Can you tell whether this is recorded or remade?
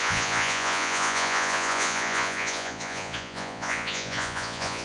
remade